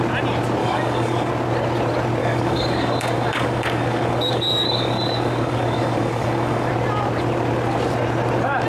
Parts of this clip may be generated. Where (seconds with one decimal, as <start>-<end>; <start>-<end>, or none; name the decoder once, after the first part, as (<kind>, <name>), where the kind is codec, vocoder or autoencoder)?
0.6-1.3 (codec, DAC); 2.2-6.7